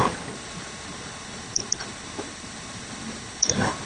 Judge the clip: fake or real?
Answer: fake